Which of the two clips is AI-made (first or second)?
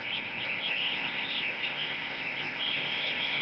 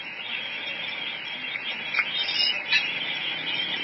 first